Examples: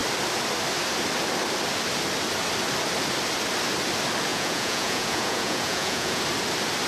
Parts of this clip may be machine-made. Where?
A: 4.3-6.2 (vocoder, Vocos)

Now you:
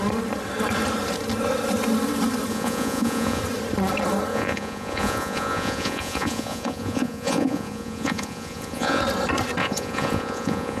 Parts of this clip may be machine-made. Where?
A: 2.5-3.4 (vocoder, Vocos); 4.3-9.0; 9.6-10.8

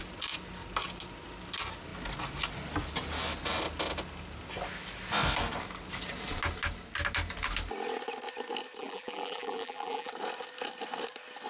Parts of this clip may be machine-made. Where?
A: 8.8-10.1 (vocoder, BigVGAN v2)

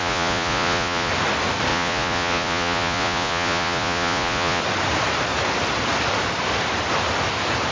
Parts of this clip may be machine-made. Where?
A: 0.0-1.1 (vocoder, Vocos); 1.7-4.6

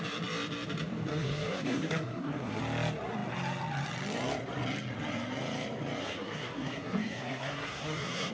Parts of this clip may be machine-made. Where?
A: 1.1-2.6 (codec, SNAC); 6.0-8.3

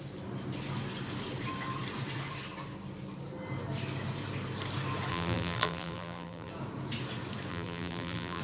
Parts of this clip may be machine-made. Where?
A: 5.1-6.5 (vocoder, BigVGAN v2); 7.5-8.4

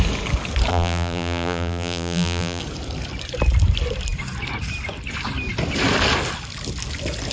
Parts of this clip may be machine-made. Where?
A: 0.7-2.6 (vocoder, BigVGAN v2)